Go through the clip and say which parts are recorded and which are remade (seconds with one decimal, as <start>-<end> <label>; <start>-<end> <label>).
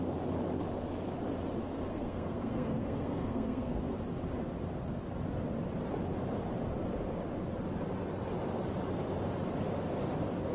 0.0-1.9 recorded; 1.9-3.8 remade; 3.8-10.5 recorded